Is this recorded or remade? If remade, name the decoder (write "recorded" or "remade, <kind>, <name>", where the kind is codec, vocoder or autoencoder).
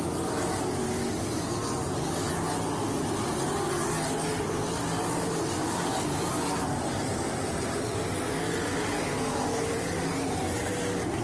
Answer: recorded